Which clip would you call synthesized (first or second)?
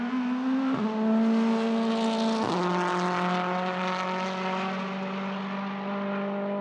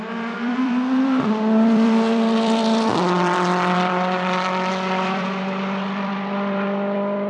second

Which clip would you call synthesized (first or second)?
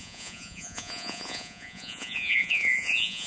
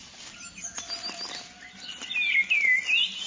first